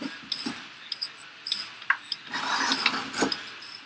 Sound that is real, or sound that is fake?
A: real